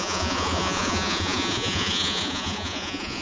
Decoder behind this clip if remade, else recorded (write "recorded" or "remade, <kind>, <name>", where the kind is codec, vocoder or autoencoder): remade, vocoder, Vocos